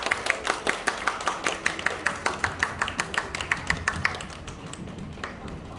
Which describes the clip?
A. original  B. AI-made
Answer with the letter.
A